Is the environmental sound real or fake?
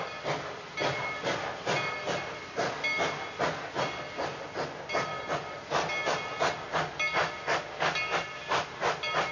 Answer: real